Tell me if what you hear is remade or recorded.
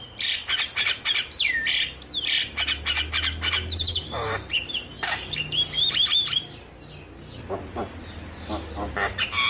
recorded